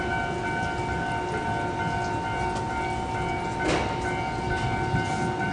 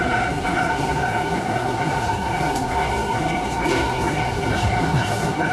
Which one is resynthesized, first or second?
second